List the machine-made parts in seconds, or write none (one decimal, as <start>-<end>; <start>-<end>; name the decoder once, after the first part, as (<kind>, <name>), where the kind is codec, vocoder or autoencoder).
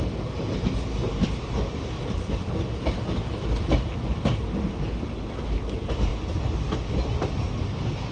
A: none